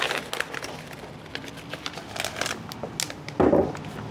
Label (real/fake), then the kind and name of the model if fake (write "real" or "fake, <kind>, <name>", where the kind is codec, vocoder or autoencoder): real